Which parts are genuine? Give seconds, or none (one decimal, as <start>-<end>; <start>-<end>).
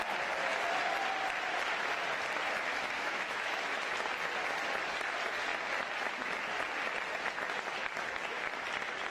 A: 0.0-2.7; 3.8-9.1